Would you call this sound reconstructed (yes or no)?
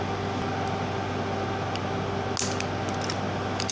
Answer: no